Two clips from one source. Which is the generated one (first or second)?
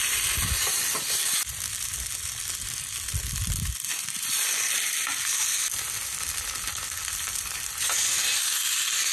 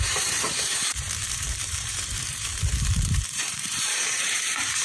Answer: second